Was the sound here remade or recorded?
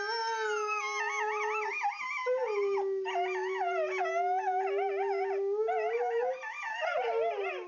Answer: recorded